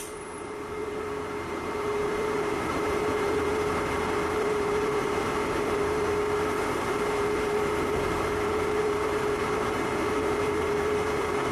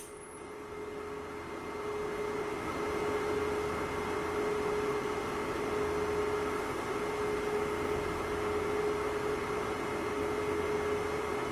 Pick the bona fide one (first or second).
second